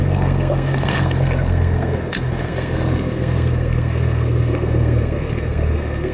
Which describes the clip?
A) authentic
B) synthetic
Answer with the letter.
B